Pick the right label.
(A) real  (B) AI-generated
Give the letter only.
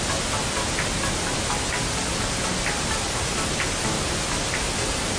A